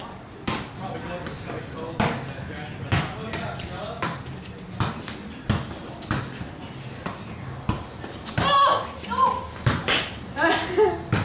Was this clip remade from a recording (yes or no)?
no